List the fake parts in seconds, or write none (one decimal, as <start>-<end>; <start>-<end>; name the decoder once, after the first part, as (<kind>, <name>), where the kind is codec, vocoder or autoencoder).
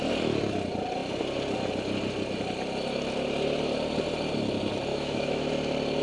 4.9-5.5 (autoencoder, DAC-VAE)